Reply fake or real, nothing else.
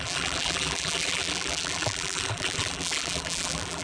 fake